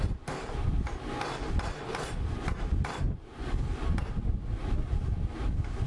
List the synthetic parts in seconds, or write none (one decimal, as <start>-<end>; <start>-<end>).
none